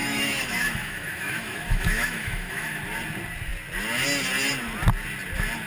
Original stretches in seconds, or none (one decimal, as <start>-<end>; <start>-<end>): 2.8-5.7